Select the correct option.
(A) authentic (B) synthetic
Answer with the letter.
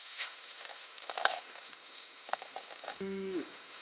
B